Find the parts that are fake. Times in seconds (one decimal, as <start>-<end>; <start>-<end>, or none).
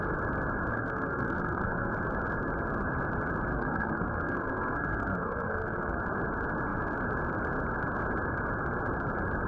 0.7-1.9; 3.5-6.0